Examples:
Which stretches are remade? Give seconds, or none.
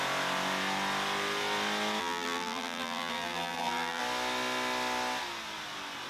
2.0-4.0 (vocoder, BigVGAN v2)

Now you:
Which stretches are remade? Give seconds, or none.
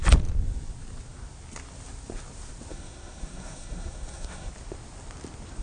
2.7-4.5 (codec, SNAC)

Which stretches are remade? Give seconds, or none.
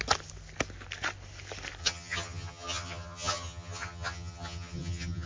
1.8-5.3 (vocoder, HiFi-GAN)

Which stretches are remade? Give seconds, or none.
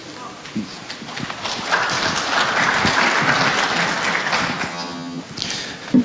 4.7-5.2 (vocoder, HiFi-GAN)